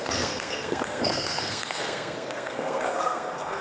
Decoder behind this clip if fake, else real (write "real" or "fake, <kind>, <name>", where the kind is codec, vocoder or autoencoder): fake, codec, SNAC